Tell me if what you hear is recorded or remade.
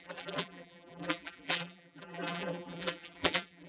remade